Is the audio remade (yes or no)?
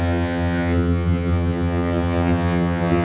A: yes